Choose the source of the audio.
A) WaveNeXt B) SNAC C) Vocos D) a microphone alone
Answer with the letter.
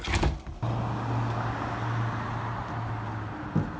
D